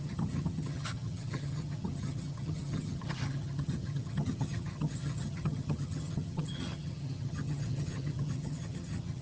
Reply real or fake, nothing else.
fake